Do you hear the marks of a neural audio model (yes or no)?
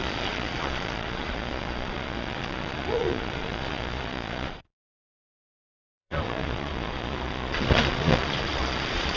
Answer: yes